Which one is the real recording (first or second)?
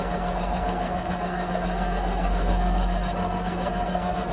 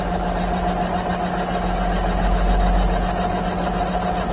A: second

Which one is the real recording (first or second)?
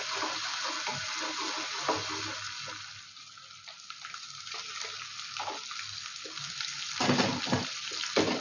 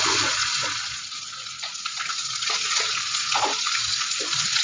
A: first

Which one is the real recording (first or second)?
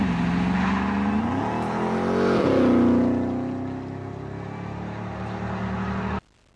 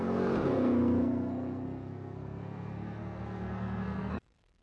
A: first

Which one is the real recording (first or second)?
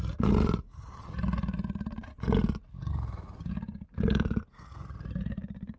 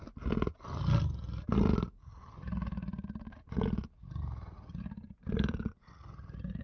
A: first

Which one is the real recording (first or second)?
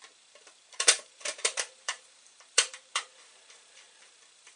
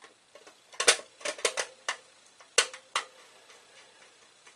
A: second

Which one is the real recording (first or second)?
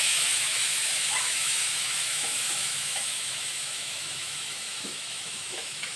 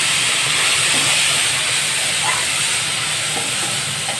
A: second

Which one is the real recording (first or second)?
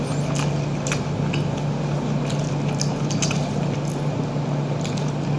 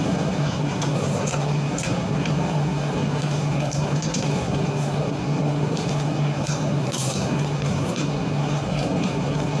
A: first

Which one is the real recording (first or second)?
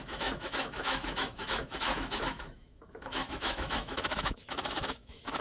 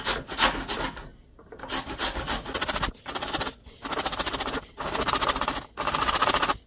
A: second